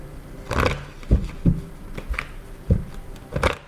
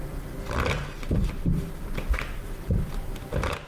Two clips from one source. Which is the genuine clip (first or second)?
first